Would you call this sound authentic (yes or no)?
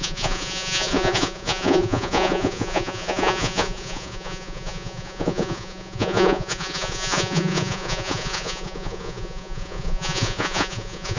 no